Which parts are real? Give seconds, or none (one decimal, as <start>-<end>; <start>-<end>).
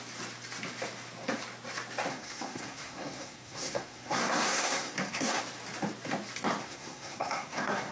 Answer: 0.0-2.1; 5.4-6.6